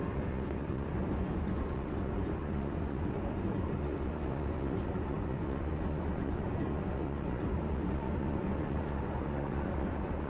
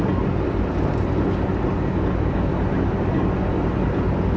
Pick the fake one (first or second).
first